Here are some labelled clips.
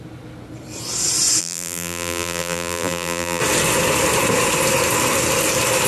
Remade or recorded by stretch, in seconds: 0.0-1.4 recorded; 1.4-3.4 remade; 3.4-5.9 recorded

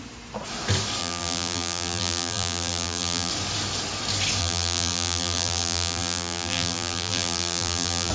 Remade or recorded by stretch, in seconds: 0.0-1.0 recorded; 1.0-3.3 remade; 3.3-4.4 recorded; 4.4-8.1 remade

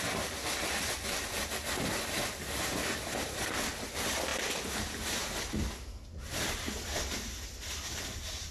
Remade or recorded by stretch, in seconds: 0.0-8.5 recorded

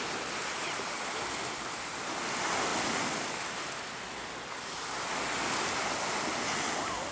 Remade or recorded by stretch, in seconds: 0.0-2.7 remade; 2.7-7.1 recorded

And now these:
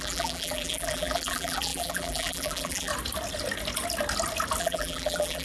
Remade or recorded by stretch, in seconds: 0.0-2.9 remade; 2.9-4.6 recorded; 4.6-5.4 remade

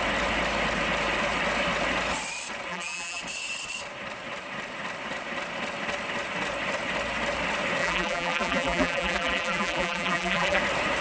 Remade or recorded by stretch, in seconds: 0.0-2.7 recorded; 2.7-3.2 remade; 3.2-7.8 recorded; 7.8-10.6 remade; 10.6-11.0 recorded

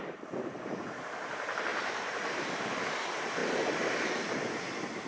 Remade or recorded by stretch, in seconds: 0.0-1.7 recorded; 1.7-2.7 remade; 2.7-5.1 recorded

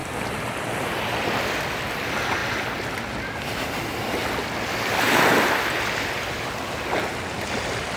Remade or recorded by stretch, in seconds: 0.0-8.0 recorded